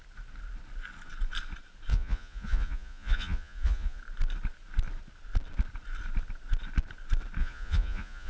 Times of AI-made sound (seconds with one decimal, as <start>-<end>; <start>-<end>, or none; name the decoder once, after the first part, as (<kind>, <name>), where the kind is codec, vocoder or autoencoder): 1.9-4.0 (vocoder, Vocos); 7.4-8.3